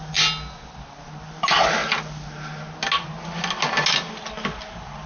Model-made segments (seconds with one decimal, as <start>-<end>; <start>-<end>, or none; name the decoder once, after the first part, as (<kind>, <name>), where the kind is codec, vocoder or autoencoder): none